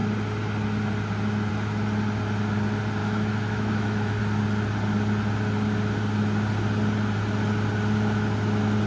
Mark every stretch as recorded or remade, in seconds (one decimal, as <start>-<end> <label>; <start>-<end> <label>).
0.0-3.0 recorded; 3.0-4.2 remade; 4.2-8.9 recorded